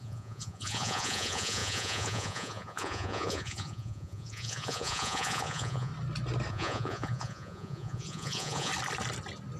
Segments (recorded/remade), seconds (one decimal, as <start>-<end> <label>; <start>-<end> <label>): 0.0-5.9 remade; 5.9-6.5 recorded; 6.5-8.7 remade; 8.7-9.6 recorded